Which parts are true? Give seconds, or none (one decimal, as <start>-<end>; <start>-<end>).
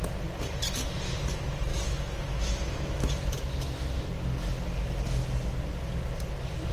0.0-1.7; 4.0-6.7